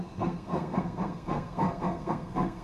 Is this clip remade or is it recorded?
remade